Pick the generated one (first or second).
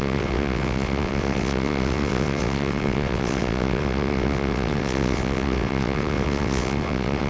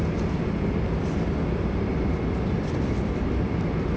first